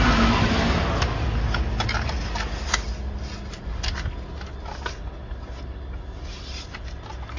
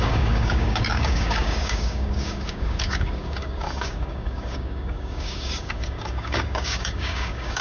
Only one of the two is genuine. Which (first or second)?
first